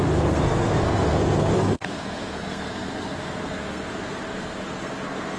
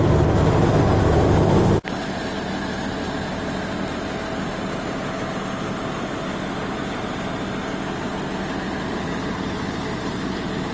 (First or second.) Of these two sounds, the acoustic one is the second